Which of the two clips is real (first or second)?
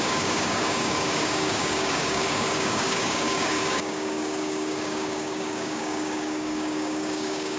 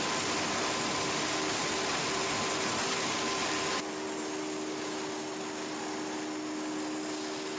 second